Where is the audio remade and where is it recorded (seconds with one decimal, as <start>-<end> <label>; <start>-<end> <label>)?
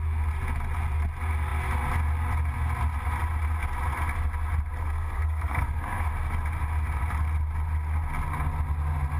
0.0-4.8 recorded; 4.8-6.1 remade; 6.1-9.2 recorded